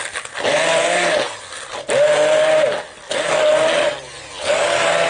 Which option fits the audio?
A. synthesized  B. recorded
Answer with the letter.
B